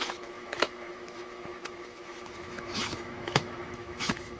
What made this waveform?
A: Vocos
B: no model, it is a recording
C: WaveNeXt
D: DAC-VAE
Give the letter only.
D